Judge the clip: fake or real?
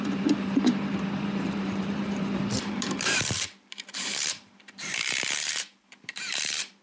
fake